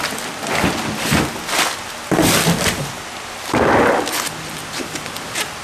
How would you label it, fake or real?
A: real